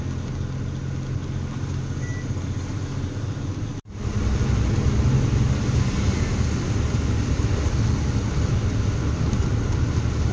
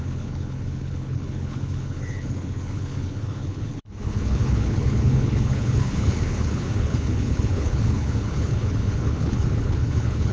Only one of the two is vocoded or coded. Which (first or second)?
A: second